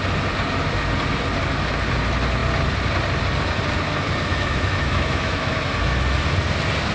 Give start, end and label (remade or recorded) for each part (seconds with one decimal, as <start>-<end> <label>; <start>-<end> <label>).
0.0-4.3 recorded; 4.3-5.7 remade; 5.7-6.9 recorded